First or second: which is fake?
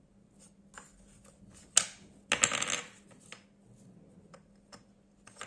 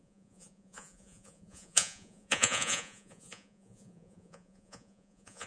second